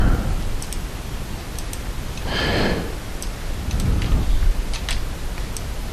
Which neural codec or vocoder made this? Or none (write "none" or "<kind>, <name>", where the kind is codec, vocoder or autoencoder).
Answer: none